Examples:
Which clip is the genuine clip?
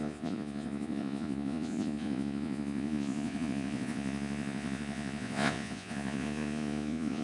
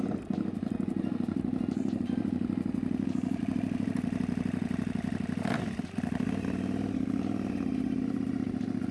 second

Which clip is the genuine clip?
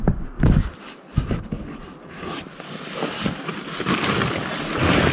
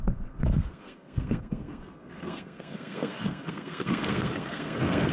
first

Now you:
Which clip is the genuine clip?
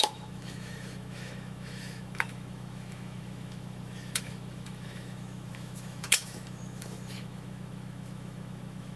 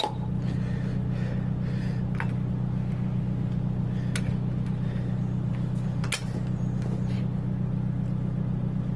second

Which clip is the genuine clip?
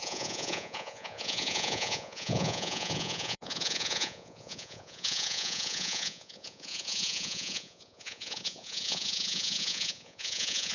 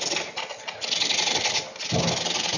second